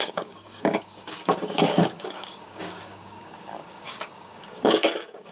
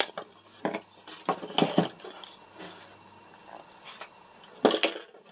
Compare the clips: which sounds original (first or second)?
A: second